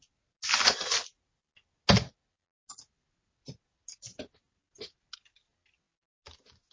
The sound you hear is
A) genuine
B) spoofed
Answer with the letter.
A